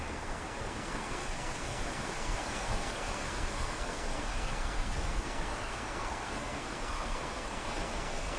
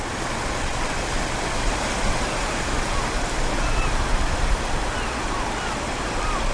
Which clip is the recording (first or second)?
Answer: second